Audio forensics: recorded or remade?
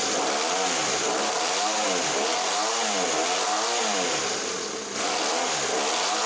recorded